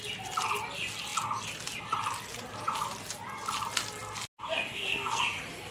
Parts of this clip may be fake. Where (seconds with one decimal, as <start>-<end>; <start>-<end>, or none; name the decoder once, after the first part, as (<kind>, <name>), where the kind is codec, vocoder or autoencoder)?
4.7-5.2 (codec, SNAC)